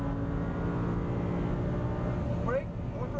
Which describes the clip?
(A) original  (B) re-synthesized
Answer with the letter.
A